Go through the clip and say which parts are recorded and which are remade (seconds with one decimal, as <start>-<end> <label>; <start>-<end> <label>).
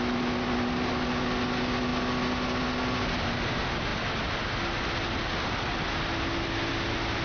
0.0-7.2 recorded